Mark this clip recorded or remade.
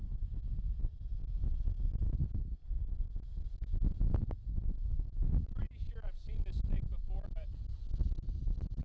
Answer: recorded